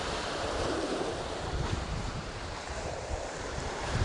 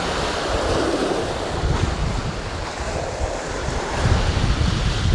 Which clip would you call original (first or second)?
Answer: second